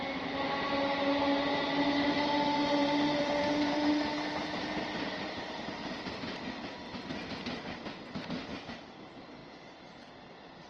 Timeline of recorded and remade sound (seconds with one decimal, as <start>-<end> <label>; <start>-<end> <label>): 0.0-2.8 recorded; 2.8-3.9 remade; 3.9-10.7 recorded